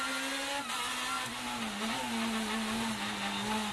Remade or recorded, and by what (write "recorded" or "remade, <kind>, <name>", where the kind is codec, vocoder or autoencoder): recorded